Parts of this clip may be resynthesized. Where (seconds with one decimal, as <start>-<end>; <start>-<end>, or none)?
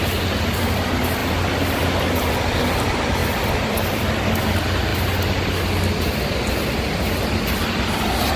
3.2-3.8